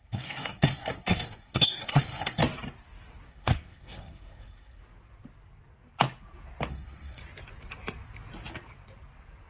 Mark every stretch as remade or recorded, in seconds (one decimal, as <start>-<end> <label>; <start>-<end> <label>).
0.0-2.4 remade; 2.4-3.3 recorded; 3.3-4.8 remade; 4.8-6.7 recorded; 6.7-7.2 remade; 7.2-9.5 recorded